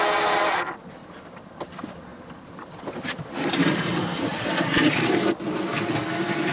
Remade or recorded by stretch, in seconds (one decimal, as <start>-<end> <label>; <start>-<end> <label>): 0.0-6.5 recorded